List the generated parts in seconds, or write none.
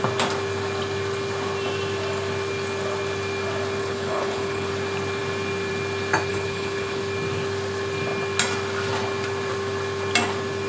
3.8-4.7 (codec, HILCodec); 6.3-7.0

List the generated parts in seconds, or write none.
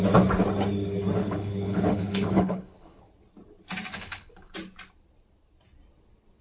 1.2-3.0 (codec, HILCodec); 3.9-4.5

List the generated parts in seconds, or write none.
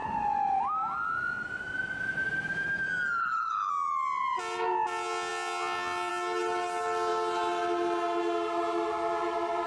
3.2-3.7 (codec, HILCodec)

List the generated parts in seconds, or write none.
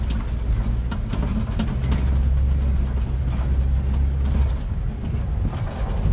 none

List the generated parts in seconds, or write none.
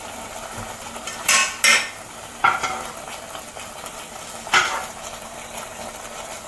none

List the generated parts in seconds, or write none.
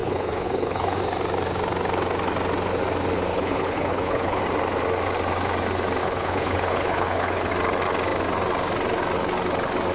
0.0-1.0 (codec, HILCodec); 3.3-4.4; 6.0-7.5